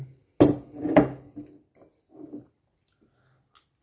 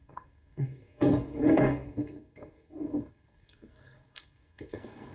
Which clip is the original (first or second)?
first